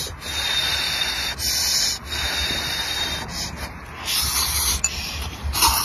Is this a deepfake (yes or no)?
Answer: no